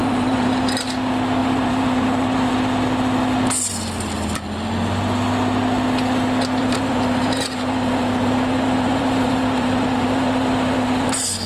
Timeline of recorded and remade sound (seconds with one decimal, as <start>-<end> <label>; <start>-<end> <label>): 0.0-0.7 remade; 0.7-1.4 recorded; 1.4-2.5 remade; 2.5-6.6 recorded; 6.6-11.5 remade